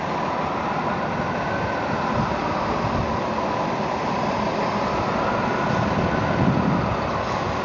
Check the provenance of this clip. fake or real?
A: real